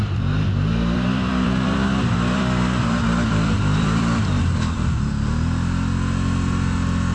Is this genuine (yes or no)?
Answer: no